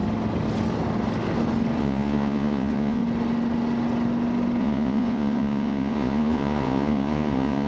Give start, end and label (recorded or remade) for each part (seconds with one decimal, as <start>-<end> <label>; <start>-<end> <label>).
0.0-1.8 recorded; 1.8-3.0 remade; 3.0-4.6 recorded; 4.6-7.7 remade

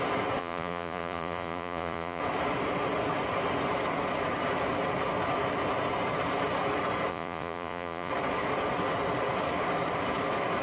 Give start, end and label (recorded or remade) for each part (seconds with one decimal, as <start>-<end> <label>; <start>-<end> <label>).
0.0-0.4 recorded; 0.4-2.2 remade; 2.2-7.1 recorded; 7.1-8.1 remade; 8.1-10.6 recorded

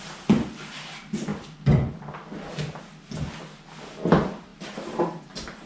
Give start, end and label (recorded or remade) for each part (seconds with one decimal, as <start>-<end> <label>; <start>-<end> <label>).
0.0-5.7 recorded

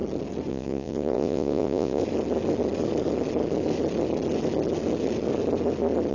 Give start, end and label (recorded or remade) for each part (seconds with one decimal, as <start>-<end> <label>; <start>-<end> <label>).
0.0-0.5 recorded; 0.5-2.0 remade; 2.0-6.1 recorded

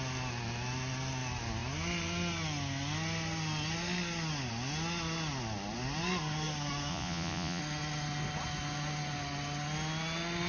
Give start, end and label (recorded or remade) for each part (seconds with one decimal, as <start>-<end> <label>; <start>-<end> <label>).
0.0-6.9 recorded; 6.9-7.6 remade; 7.6-10.5 recorded